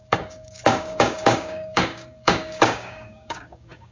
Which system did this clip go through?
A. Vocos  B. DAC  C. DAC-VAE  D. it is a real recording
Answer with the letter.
B